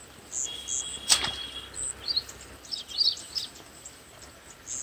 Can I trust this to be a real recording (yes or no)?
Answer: yes